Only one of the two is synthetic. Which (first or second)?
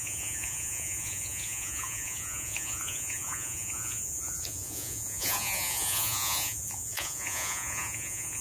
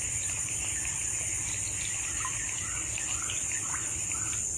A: first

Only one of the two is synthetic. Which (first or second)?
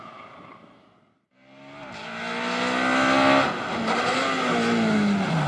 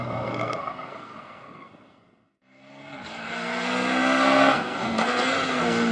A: second